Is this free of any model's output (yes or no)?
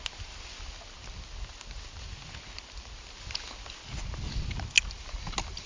yes